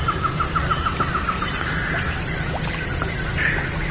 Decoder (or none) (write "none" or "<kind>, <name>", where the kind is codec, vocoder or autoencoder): none